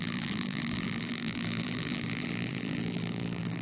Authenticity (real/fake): fake